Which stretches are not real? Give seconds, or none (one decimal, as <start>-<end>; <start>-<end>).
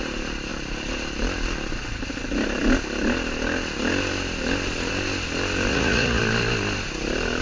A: 5.7-6.2